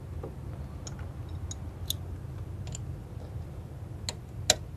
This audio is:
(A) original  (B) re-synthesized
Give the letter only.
A